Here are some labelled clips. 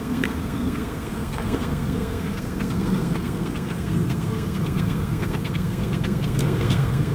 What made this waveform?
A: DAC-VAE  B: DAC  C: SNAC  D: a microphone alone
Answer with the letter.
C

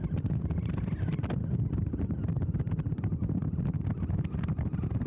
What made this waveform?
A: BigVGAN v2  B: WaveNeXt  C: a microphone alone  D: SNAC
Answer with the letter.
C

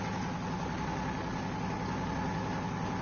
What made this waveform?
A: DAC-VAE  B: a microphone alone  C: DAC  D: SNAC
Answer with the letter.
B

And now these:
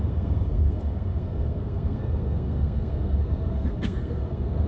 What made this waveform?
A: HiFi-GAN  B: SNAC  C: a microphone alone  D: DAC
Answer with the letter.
B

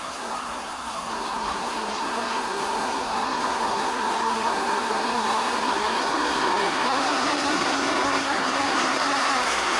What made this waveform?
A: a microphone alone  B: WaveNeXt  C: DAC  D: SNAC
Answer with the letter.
D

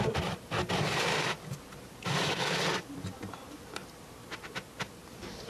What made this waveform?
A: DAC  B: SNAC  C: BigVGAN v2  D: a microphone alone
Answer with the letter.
D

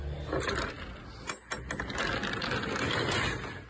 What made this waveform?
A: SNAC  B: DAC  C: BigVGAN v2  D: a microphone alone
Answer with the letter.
D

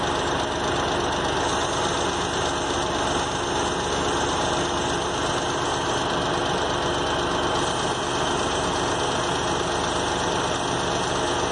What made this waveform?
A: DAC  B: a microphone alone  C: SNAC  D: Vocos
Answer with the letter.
B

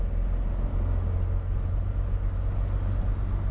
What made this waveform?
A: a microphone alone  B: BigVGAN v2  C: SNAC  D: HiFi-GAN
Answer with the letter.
A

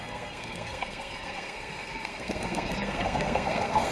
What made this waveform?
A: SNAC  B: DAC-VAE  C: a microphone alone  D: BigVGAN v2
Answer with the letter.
A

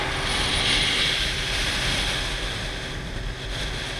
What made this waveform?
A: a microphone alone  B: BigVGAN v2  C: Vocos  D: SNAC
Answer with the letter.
A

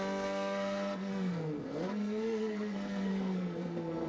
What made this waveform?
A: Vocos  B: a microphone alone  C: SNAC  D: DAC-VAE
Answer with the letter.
C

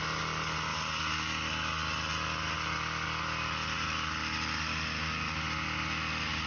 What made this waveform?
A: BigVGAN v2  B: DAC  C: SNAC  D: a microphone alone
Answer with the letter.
D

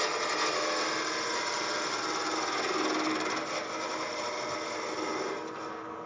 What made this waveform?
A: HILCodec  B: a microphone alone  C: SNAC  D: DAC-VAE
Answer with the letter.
B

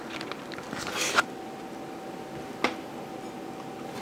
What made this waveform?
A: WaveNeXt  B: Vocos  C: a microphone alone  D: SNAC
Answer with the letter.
C